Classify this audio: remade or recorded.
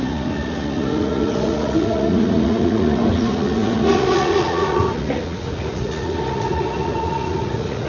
remade